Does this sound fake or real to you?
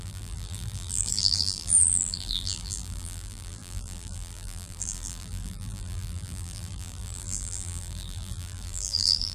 fake